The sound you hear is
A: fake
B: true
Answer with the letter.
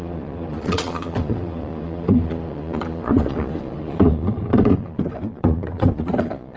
A